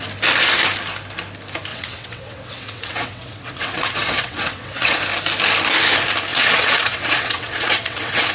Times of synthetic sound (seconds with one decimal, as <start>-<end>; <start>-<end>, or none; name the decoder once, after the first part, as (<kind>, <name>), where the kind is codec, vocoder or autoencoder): 1.7-5.0 (vocoder, WaveNeXt); 6.3-8.3